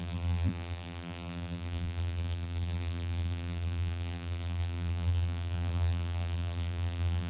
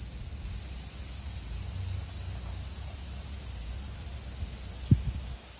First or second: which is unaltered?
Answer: second